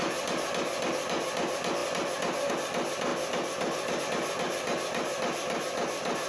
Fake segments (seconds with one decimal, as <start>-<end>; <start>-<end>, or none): none